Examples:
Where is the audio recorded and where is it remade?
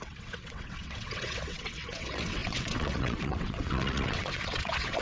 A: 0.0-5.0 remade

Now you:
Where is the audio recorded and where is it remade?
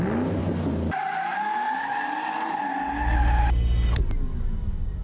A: 0.0-5.0 recorded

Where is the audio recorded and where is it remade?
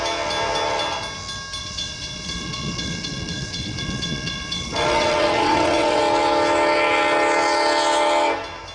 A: 0.0-1.6 recorded; 1.6-6.0 remade; 6.0-8.7 recorded